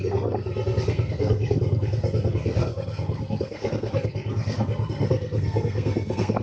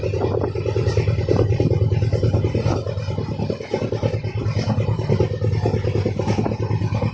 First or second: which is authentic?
second